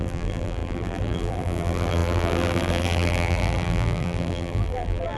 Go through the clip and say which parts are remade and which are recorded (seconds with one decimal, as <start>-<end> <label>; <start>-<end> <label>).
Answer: 0.0-5.2 remade